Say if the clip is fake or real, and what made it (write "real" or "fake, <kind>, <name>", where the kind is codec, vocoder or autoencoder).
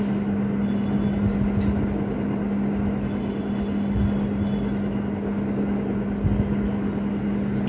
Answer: real